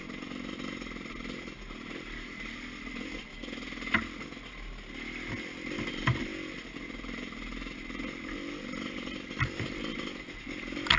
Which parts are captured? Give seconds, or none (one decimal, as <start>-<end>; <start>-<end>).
0.0-11.0